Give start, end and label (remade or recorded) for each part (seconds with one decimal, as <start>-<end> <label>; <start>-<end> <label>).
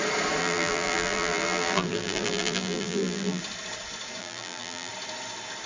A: 0.0-0.4 recorded; 0.4-3.4 remade; 3.4-4.2 recorded; 4.2-4.9 remade; 4.9-5.7 recorded